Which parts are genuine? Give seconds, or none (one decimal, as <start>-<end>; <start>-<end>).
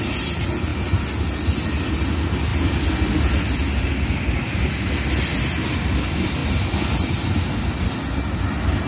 0.0-8.9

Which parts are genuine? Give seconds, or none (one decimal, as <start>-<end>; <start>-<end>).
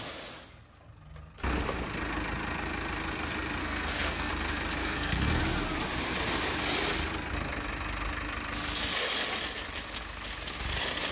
0.0-3.6; 4.3-4.8; 5.4-11.1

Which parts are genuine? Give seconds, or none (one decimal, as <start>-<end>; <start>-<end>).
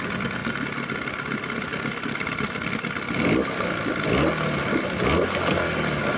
0.0-6.2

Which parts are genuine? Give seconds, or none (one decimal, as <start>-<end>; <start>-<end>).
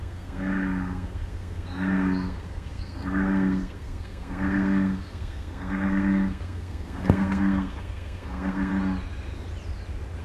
8.7-10.2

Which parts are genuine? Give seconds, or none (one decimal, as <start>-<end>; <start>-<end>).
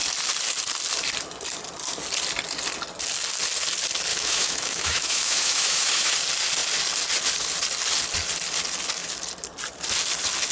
0.0-4.1; 6.1-10.5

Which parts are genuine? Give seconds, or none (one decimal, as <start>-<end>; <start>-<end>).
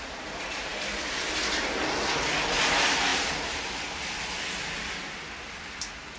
0.0-6.2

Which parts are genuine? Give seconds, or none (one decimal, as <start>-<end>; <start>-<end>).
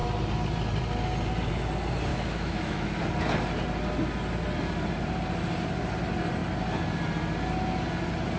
0.0-2.1; 3.0-8.4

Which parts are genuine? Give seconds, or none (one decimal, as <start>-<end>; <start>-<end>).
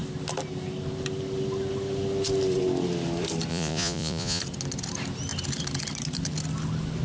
0.0-3.5; 4.4-7.0